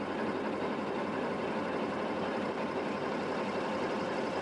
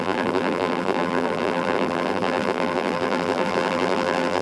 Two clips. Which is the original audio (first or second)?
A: first